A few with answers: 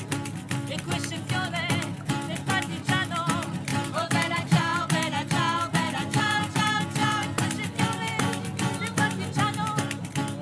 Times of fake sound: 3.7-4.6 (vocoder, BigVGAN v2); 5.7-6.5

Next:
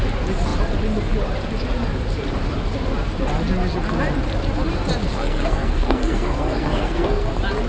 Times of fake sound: 5.1-7.3 (codec, SNAC)

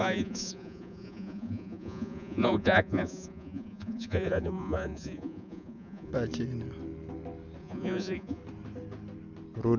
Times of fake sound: 0.0-6.1 (vocoder, Vocos); 7.6-8.4

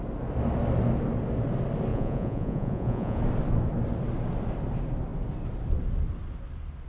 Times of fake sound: 1.9-3.2 (vocoder, Vocos)

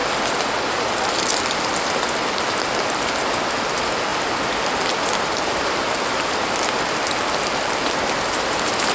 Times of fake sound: 1.3-4.1 (vocoder, BigVGAN v2); 5.0-8.9

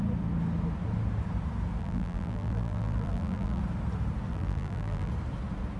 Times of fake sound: 1.8-3.6 (vocoder, BigVGAN v2); 4.3-5.1

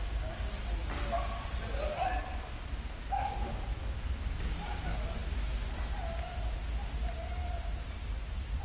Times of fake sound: none

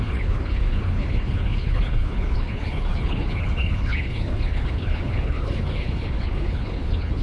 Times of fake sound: 0.0-7.2 (codec, HILCodec)